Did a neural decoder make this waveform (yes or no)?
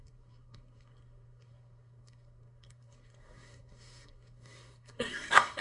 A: yes